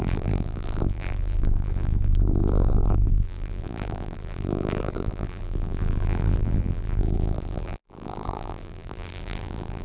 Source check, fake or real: fake